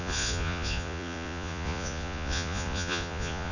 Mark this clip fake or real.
fake